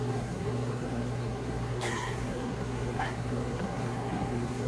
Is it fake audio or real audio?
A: fake